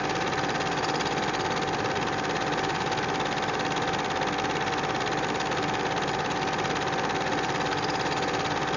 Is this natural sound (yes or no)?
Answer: yes